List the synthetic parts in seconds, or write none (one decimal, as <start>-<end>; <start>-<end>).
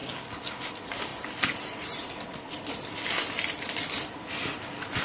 0.0-0.6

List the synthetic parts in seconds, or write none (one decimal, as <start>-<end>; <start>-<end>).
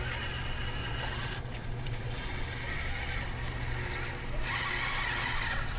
0.8-2.4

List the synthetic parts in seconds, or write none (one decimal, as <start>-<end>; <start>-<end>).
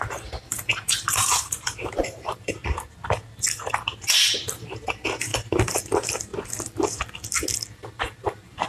0.0-2.6; 4.4-6.3; 7.6-8.7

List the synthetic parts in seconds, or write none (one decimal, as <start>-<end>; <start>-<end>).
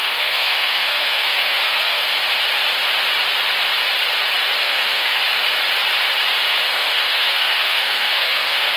0.0-2.0; 4.6-5.2; 6.7-8.8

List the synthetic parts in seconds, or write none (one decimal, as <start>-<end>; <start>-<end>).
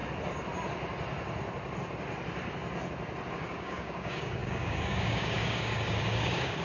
3.3-6.6